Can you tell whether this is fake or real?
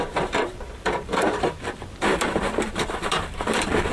fake